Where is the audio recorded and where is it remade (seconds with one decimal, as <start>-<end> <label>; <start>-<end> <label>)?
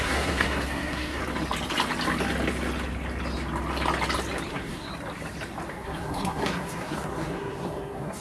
0.0-1.2 remade; 1.2-4.5 recorded; 4.5-4.9 remade; 4.9-5.7 recorded; 5.7-8.2 remade